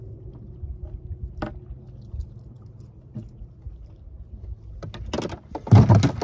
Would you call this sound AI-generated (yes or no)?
no